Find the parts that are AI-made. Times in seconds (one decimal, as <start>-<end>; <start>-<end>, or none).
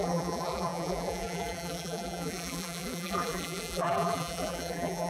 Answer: 0.0-5.1